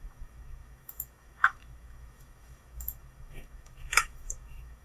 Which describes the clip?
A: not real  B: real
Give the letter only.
A